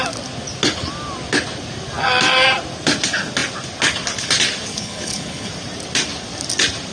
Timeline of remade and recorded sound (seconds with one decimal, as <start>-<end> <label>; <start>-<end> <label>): 0.0-4.7 recorded; 4.7-5.5 remade; 5.5-6.9 recorded